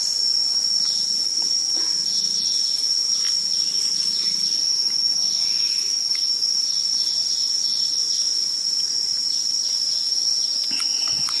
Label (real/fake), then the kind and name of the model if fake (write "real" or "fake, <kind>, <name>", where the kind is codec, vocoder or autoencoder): real